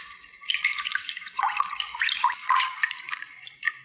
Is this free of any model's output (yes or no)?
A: no